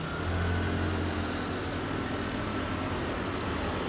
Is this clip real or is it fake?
real